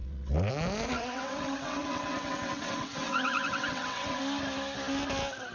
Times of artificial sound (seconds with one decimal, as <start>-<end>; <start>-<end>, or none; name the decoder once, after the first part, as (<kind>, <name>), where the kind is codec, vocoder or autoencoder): 0.0-0.5 (vocoder, WaveNeXt); 0.9-4.2